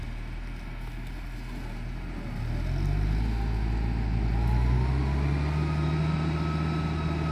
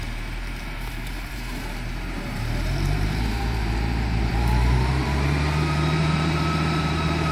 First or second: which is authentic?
first